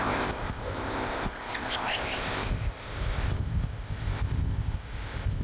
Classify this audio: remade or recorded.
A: remade